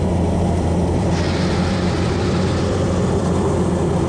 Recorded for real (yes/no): no